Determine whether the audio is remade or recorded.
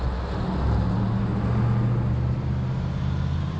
recorded